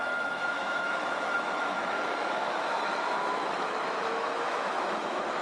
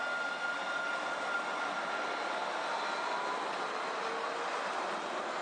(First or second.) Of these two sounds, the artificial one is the first